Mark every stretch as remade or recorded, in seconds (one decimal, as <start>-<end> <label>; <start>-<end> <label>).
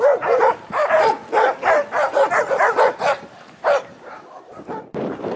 0.0-1.2 remade; 1.2-4.4 recorded; 4.4-5.4 remade